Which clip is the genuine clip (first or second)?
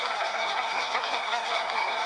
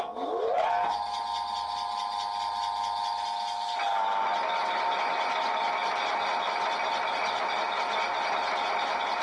second